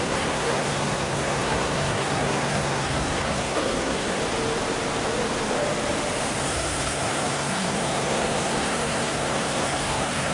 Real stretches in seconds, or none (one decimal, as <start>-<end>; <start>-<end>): 4.2-6.4

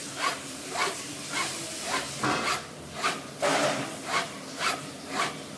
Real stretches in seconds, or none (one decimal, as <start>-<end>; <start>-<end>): 0.0-5.6

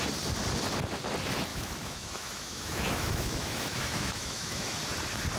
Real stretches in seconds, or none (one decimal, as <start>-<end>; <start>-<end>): 0.0-1.5; 4.7-5.4

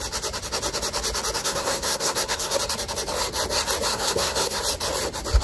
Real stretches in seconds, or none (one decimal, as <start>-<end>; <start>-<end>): 0.0-1.4; 2.6-3.9; 4.6-5.4

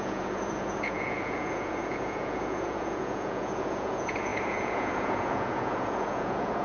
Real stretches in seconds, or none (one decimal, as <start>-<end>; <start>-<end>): none

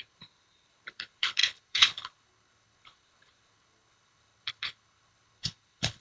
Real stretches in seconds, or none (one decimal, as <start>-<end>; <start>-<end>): none

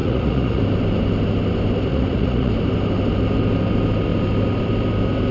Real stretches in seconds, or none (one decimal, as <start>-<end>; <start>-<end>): 0.6-1.9; 2.5-5.3

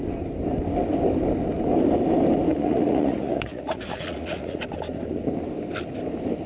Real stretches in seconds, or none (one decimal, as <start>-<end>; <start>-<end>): 0.0-2.5; 4.6-6.5